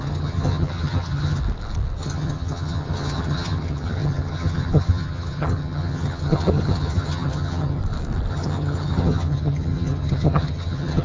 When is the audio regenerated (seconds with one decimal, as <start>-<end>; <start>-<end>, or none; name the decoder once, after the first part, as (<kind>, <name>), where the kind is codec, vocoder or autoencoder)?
0.0-1.4 (vocoder, HiFi-GAN); 2.0-7.8; 8.3-11.0